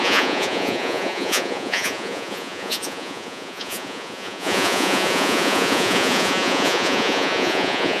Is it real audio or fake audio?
fake